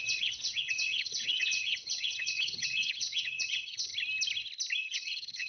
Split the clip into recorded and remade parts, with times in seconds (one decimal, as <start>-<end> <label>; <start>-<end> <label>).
0.0-3.9 remade; 3.9-4.8 recorded; 4.8-5.5 remade